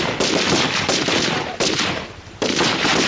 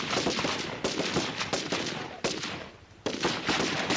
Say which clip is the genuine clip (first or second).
second